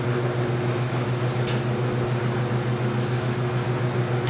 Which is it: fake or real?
real